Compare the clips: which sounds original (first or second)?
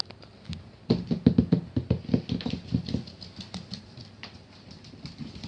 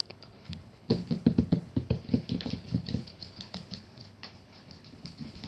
first